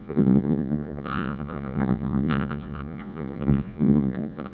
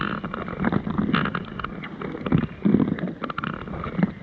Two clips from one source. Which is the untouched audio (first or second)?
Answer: second